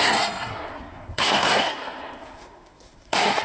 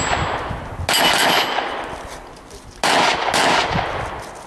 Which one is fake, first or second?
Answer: first